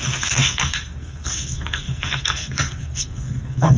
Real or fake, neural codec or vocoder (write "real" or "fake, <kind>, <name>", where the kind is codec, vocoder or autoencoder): fake, codec, SNAC